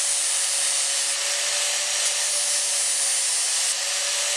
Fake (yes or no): no